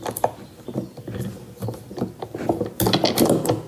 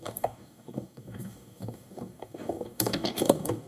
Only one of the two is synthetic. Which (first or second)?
second